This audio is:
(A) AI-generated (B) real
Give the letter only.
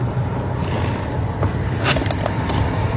B